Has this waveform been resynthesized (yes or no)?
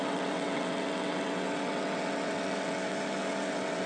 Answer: yes